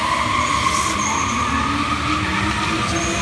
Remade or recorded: recorded